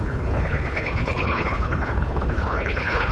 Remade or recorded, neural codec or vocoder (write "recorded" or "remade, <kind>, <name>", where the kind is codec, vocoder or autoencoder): remade, codec, HILCodec